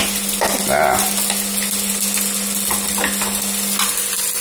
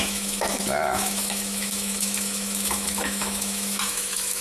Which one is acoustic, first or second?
first